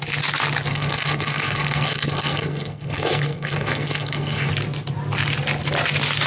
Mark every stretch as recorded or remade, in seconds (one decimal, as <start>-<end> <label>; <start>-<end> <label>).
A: 0.0-0.7 recorded; 0.7-4.5 remade; 4.5-6.3 recorded